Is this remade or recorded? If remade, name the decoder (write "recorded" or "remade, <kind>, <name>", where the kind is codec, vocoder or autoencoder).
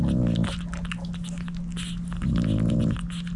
recorded